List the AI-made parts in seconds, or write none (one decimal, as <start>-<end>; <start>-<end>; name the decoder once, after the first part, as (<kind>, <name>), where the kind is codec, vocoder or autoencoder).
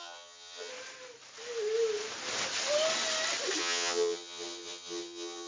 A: 0.0-0.7 (vocoder, HiFi-GAN); 3.6-5.5